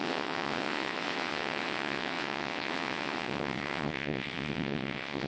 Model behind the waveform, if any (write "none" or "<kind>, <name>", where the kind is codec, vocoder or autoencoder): vocoder, WaveNeXt